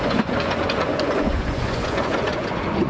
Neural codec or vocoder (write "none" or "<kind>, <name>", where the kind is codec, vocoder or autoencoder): vocoder, Vocos